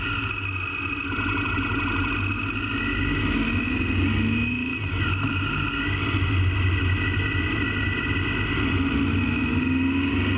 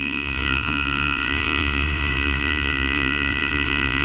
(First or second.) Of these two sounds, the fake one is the second